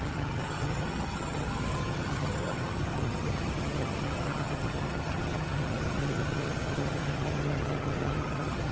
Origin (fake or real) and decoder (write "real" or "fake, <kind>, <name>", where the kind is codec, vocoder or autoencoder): fake, vocoder, HiFi-GAN